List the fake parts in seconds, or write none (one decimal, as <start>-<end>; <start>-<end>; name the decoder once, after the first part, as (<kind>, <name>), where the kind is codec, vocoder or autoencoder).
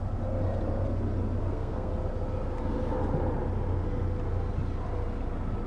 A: 1.4-1.9 (codec, SNAC)